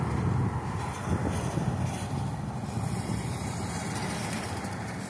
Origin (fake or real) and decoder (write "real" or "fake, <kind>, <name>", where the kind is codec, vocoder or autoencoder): real